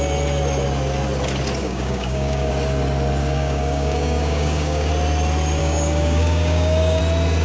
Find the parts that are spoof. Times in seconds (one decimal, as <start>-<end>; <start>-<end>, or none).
1.6-2.5; 3.2-4.9; 5.6-7.0